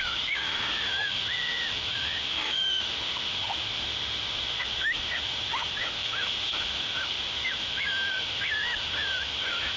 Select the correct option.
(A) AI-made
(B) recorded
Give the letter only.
A